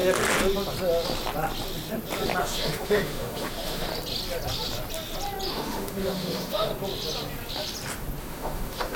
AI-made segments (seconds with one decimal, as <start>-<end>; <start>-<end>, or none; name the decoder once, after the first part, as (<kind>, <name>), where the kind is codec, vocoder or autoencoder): 2.4-3.9 (autoencoder, DAC-VAE); 5.5-6.7; 8.2-9.0